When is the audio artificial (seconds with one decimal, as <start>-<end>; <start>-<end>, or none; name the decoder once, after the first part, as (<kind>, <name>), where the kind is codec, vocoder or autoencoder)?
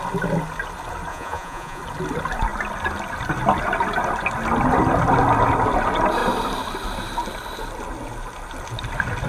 1.1-1.8 (vocoder, Vocos)